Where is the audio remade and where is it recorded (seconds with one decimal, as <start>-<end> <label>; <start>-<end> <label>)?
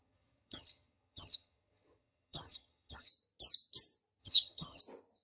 0.0-3.1 remade; 3.1-4.2 recorded; 4.2-4.8 remade; 4.8-5.2 recorded